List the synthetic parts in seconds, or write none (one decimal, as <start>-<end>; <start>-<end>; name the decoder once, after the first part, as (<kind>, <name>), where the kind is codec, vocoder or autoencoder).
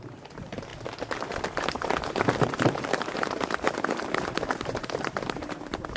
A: 0.0-0.7 (vocoder, BigVGAN v2); 1.5-6.0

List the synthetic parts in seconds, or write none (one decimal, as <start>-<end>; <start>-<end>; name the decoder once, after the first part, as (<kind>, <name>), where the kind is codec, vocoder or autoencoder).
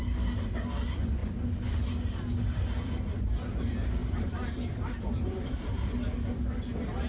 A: 4.0-5.9 (vocoder, BigVGAN v2)